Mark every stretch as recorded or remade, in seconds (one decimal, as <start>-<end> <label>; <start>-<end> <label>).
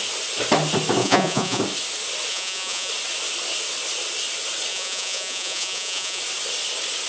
0.0-1.0 recorded; 1.0-1.6 remade; 1.6-2.3 recorded; 2.3-2.9 remade; 2.9-4.7 recorded; 4.7-6.2 remade; 6.2-7.1 recorded